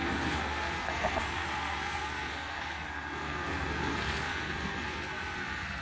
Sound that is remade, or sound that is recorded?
remade